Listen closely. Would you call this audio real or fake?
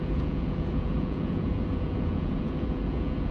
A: fake